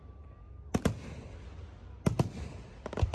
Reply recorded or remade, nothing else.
recorded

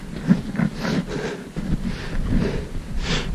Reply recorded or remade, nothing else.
recorded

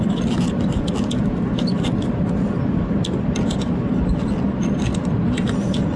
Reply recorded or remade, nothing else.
recorded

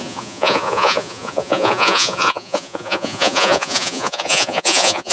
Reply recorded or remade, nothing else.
remade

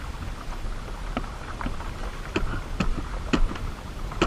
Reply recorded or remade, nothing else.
recorded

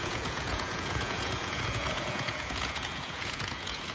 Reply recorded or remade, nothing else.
remade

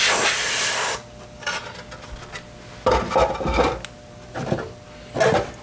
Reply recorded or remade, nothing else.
recorded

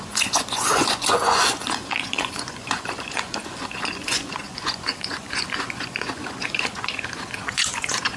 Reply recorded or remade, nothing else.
remade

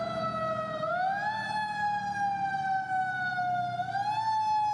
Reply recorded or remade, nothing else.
recorded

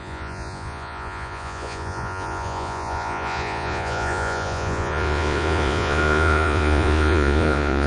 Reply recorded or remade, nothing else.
remade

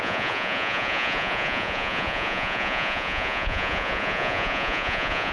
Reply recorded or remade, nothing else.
remade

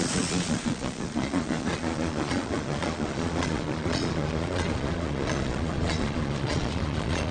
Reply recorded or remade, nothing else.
remade